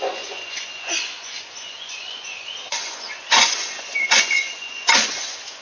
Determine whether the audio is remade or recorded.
remade